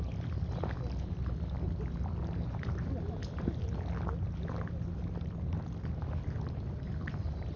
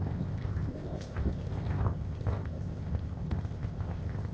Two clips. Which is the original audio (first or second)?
first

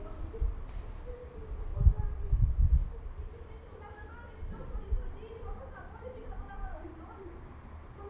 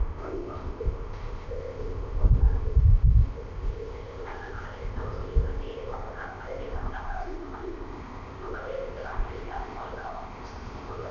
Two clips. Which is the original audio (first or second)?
first